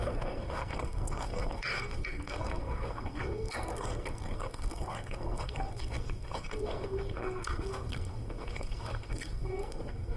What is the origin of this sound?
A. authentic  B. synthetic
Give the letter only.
B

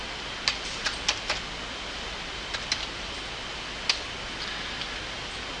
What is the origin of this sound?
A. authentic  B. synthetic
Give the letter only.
A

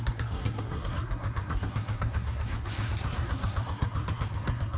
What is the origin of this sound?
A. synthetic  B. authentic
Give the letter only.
A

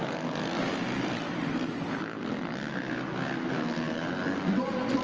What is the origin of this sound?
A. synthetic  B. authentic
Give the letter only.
B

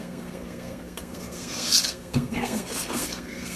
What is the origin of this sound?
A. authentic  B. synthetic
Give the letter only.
B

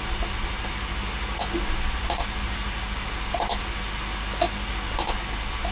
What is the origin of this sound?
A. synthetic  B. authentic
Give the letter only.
B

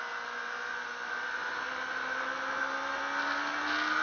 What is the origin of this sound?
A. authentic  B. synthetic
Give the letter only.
A